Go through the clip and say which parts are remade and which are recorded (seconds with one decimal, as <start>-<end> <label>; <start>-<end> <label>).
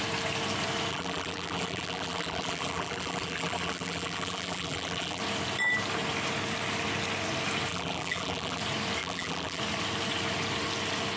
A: 0.0-0.9 recorded; 0.9-5.2 remade; 5.2-7.7 recorded; 7.7-8.6 remade; 8.6-9.0 recorded; 9.0-9.6 remade; 9.6-11.2 recorded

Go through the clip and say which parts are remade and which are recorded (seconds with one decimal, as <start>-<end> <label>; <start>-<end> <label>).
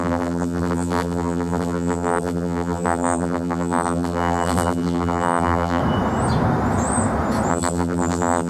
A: 0.0-5.8 remade; 5.8-7.5 recorded; 7.5-8.5 remade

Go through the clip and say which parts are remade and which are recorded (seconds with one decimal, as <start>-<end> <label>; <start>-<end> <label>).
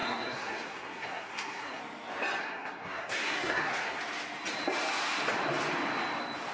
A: 0.0-1.8 remade; 1.8-2.4 recorded; 2.4-4.0 remade; 4.0-6.5 recorded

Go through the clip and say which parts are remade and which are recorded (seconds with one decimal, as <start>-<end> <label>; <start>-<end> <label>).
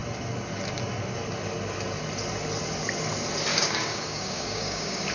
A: 0.0-3.5 recorded; 3.5-5.1 remade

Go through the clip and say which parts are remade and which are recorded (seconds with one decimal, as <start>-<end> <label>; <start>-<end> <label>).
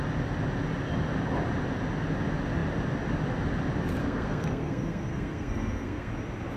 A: 0.0-4.0 recorded; 4.0-6.1 remade; 6.1-6.6 recorded